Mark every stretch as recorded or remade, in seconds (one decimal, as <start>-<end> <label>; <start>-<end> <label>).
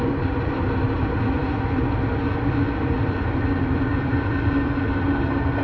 0.0-5.6 recorded